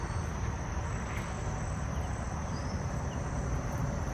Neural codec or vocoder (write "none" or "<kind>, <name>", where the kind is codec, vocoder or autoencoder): none